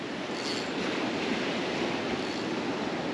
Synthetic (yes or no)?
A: no